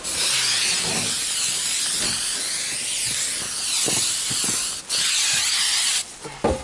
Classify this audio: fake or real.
real